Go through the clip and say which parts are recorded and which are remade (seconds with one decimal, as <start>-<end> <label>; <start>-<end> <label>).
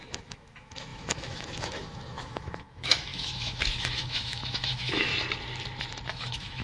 0.0-5.1 remade; 5.1-6.1 recorded; 6.1-6.6 remade